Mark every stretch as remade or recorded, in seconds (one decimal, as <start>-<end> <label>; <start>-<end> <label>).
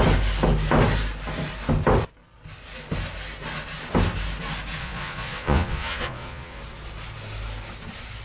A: 0.0-4.8 recorded; 4.8-6.6 remade; 6.6-8.2 recorded